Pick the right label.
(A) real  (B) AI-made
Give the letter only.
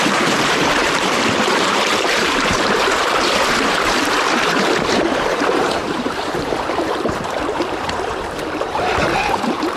B